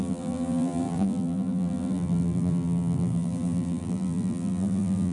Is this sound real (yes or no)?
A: no